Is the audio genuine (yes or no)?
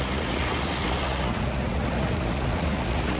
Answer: no